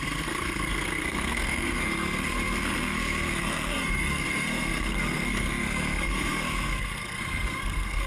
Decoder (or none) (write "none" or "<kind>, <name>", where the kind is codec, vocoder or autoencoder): codec, SNAC